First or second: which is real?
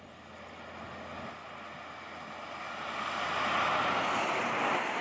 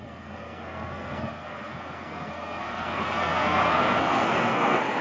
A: first